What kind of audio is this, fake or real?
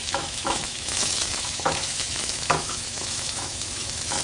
fake